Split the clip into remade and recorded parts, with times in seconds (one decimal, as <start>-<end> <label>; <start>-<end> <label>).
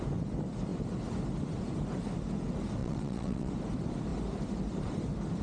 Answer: 0.0-2.8 recorded; 2.8-3.5 remade; 3.5-5.4 recorded